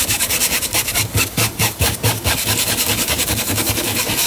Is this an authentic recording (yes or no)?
no